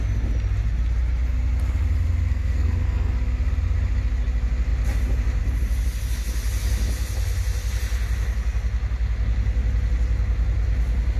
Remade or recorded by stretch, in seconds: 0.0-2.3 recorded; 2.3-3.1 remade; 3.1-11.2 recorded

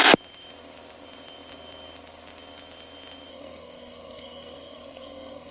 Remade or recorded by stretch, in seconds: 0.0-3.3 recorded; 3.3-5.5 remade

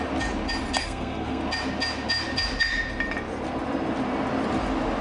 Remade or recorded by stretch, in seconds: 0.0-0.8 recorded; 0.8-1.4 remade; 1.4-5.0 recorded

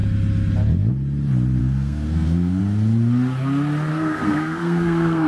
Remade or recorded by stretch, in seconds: 0.0-1.6 recorded; 1.6-2.6 remade; 2.6-3.9 recorded; 3.9-5.3 remade

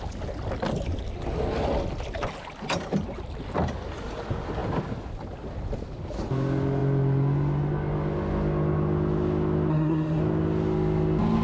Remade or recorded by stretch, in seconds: 0.0-9.7 recorded; 9.7-10.2 remade; 10.2-11.4 recorded

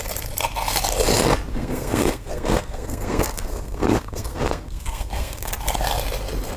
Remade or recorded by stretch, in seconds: 0.0-1.5 recorded; 1.5-5.5 remade; 5.5-6.6 recorded